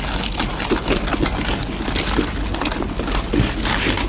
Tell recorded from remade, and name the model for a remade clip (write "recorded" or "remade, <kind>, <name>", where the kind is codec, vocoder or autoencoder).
recorded